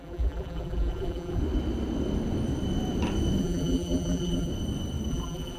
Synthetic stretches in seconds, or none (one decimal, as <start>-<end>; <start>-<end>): 0.0-1.4; 3.4-4.5; 5.1-5.6